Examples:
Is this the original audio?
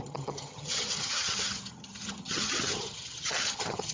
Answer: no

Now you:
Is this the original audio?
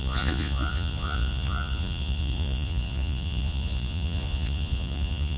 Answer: no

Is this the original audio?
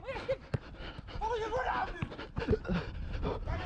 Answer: yes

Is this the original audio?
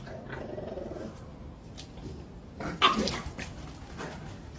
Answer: yes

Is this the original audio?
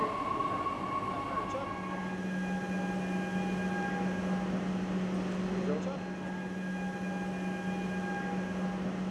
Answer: yes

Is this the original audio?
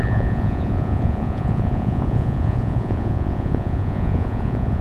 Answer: no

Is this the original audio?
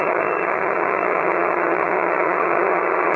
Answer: no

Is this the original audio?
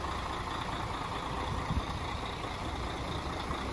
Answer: yes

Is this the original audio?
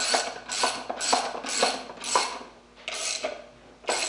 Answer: yes